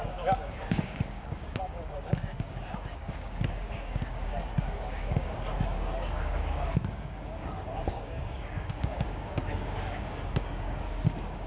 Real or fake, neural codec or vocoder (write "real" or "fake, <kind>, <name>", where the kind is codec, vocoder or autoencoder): fake, codec, DAC